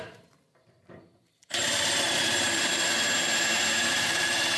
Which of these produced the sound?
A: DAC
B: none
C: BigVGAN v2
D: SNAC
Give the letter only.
C